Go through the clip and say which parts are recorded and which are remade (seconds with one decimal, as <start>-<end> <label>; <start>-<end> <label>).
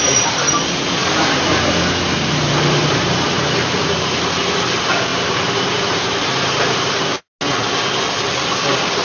0.0-1.0 recorded; 1.0-4.2 remade; 4.2-5.1 recorded; 5.1-7.2 remade; 7.2-9.0 recorded